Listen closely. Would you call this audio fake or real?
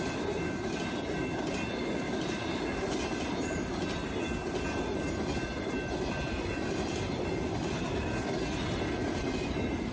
real